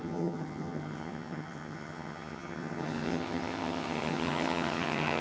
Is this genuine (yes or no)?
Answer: no